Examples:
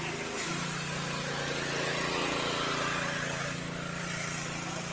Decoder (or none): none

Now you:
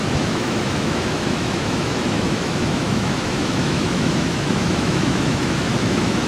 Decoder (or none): autoencoder, DAC-VAE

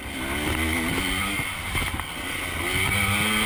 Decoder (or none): none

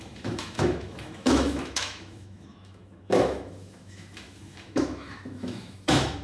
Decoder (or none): autoencoder, DAC-VAE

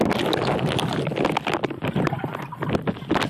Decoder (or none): none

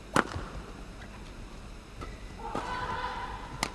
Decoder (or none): none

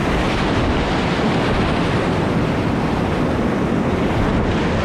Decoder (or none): none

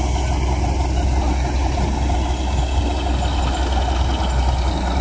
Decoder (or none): none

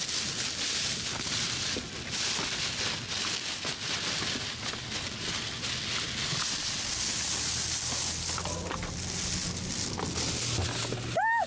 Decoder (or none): none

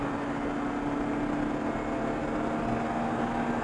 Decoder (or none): none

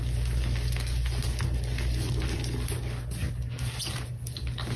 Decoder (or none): none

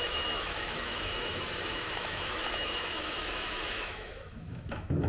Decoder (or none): autoencoder, DAC-VAE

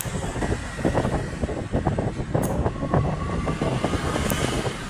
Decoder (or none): none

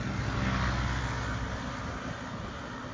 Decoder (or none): none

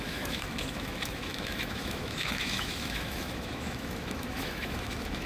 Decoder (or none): autoencoder, DAC-VAE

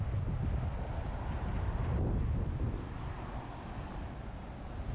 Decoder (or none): none